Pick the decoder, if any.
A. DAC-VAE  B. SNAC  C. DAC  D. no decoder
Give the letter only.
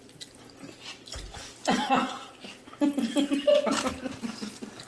D